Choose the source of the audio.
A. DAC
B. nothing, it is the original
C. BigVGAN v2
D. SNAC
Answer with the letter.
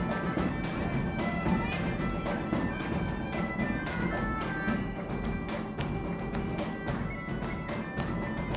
B